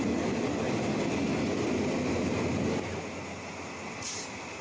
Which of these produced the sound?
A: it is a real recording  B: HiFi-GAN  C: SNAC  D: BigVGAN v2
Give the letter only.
A